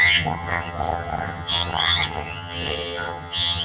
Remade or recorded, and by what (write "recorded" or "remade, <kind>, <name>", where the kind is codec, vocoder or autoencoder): remade, vocoder, HiFi-GAN